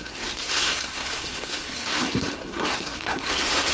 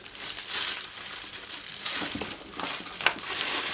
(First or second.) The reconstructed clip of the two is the first